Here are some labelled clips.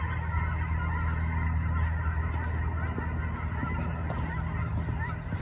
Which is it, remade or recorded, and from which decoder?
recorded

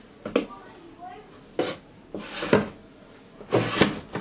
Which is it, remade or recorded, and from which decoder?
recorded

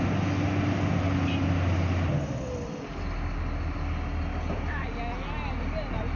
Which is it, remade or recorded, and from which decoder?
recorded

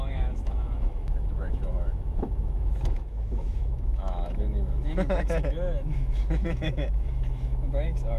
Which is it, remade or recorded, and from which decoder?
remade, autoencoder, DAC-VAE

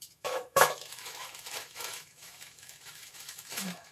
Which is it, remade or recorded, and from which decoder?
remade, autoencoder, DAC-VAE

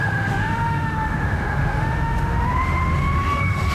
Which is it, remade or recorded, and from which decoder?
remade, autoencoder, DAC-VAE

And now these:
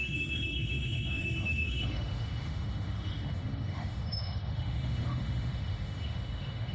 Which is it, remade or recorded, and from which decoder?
remade, autoencoder, DAC-VAE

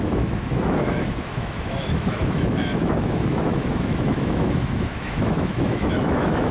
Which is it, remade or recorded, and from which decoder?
remade, autoencoder, DAC-VAE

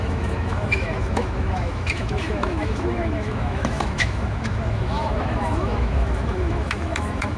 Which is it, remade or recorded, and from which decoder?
remade, autoencoder, DAC-VAE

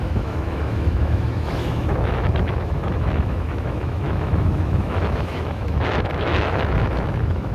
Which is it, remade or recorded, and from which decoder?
remade, autoencoder, DAC-VAE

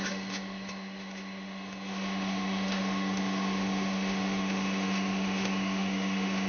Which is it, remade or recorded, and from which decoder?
remade, autoencoder, DAC-VAE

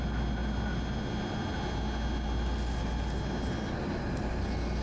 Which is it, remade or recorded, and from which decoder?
recorded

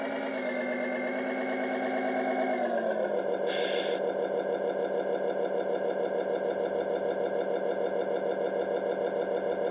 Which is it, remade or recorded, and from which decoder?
recorded